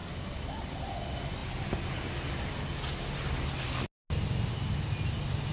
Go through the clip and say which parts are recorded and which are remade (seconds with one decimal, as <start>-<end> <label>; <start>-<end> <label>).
0.0-0.9 remade; 0.9-1.4 recorded; 1.4-3.6 remade; 3.6-5.5 recorded